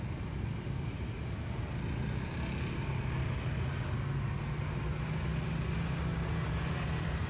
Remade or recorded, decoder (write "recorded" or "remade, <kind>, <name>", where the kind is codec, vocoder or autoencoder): recorded